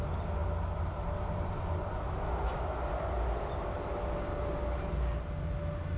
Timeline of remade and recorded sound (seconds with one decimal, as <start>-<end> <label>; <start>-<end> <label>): 0.0-6.0 recorded